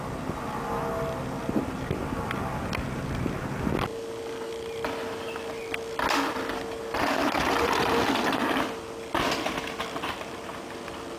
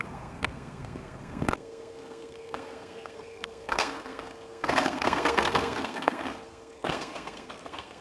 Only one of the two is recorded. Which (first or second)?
first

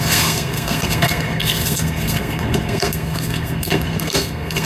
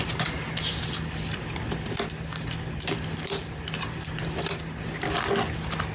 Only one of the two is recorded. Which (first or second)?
second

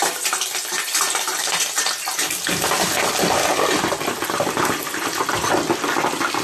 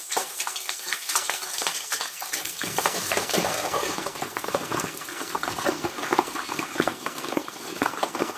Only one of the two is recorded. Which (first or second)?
first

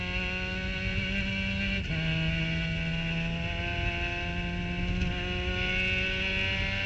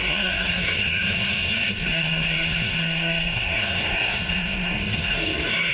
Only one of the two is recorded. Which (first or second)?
first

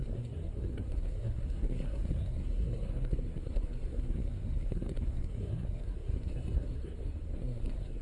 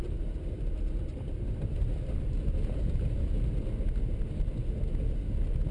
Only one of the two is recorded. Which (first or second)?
second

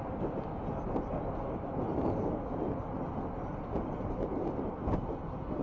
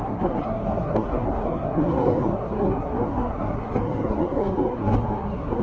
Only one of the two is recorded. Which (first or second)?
first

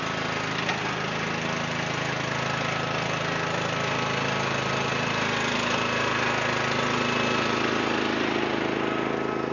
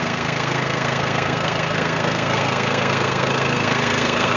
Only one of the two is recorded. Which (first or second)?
first